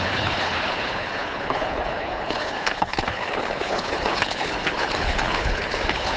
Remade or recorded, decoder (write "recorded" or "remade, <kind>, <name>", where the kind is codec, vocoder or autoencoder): remade, codec, HILCodec